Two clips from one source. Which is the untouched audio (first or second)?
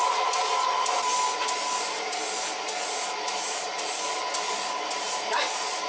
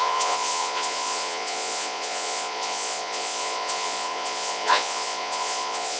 first